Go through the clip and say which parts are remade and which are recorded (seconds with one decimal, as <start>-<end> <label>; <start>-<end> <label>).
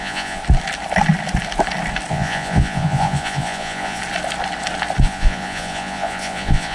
0.0-0.4 remade; 0.4-2.1 recorded; 2.1-4.0 remade; 4.0-5.0 recorded; 5.0-6.7 remade